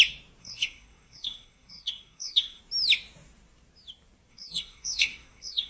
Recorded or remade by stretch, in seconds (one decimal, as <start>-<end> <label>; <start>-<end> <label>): 0.0-0.4 recorded; 0.4-2.6 remade; 2.6-4.3 recorded; 4.3-5.7 remade